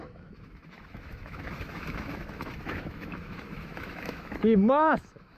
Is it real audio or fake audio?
fake